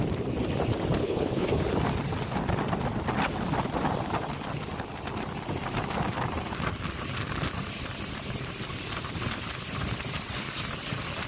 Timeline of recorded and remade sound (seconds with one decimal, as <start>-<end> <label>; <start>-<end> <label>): 0.0-1.0 recorded; 1.0-1.6 remade; 1.6-11.3 recorded